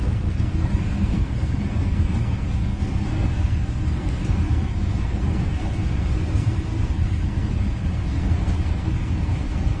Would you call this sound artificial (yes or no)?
yes